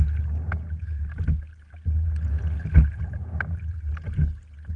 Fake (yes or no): no